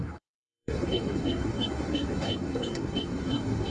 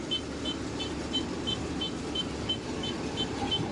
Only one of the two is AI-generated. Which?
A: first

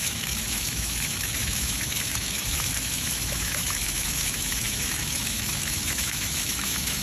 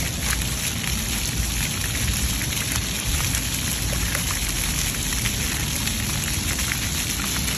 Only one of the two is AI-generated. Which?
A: first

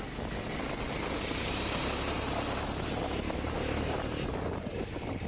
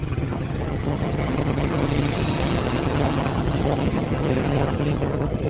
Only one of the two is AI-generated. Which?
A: second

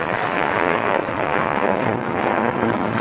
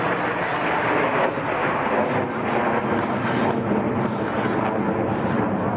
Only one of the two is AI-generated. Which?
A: first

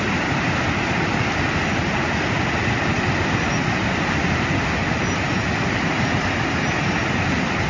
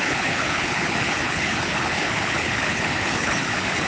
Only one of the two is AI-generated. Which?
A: second